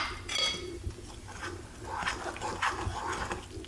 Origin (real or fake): real